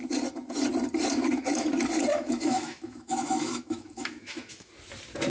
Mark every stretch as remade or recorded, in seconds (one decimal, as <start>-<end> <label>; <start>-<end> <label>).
0.0-2.1 recorded; 2.1-4.7 remade; 4.7-5.3 recorded